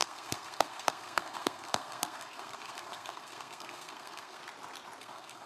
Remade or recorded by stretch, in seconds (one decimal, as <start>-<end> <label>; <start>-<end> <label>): 0.0-4.4 remade; 4.4-5.0 recorded; 5.0-5.5 remade